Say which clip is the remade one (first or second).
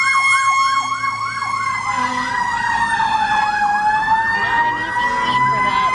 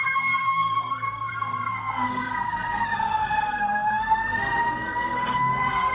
second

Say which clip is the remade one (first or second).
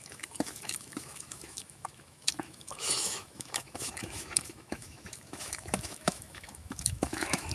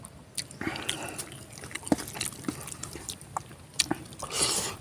first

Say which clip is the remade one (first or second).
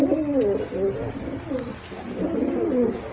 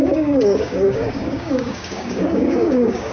second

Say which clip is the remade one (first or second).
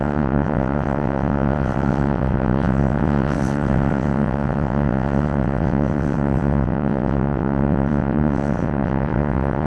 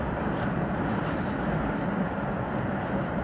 first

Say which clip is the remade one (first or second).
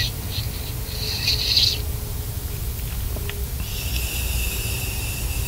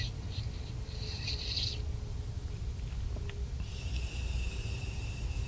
second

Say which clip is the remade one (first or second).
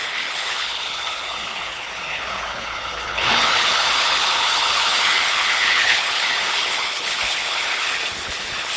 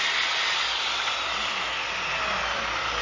first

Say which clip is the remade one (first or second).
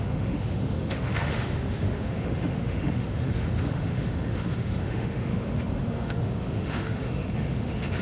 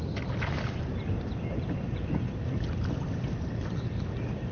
first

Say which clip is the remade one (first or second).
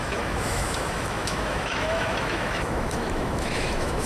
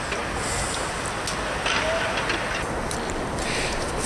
first